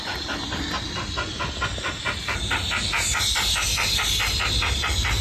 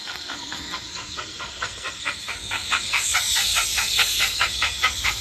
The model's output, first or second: second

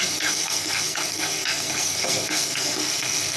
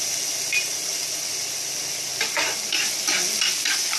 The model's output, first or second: first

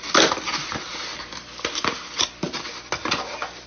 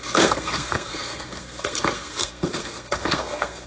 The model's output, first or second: second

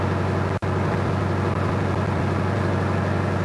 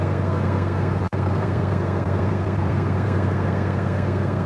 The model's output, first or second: second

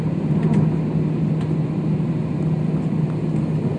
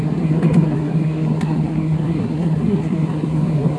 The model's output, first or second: second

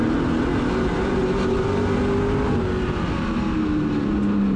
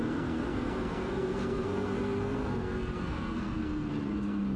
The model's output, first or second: second